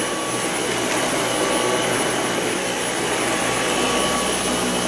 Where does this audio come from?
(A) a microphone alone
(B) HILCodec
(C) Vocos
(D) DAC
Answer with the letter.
A